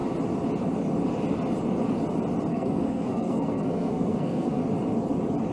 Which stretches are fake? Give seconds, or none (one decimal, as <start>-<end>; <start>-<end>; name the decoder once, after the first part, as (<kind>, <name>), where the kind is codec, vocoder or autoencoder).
2.5-4.6 (codec, SNAC)